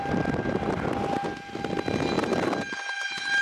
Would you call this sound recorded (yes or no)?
yes